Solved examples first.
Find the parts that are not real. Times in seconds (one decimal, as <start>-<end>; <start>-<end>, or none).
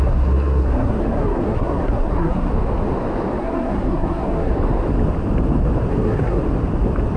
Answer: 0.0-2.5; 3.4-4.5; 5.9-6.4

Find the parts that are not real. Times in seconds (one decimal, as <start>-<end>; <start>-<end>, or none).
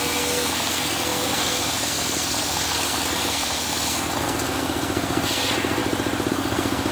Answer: 0.0-5.8; 6.3-6.9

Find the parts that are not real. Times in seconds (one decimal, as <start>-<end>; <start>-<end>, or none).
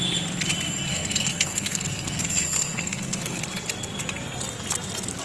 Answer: 0.9-3.4